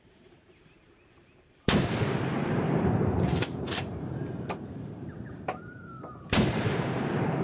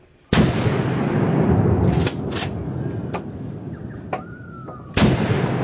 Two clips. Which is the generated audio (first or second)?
first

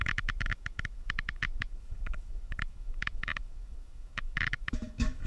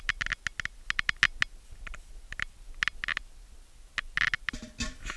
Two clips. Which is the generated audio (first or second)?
first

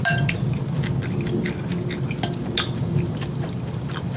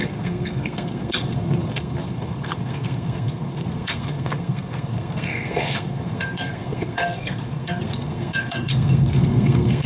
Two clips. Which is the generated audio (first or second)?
second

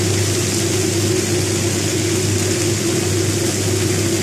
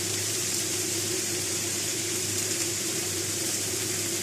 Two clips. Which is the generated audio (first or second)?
second